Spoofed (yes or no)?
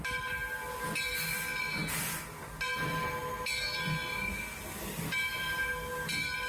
no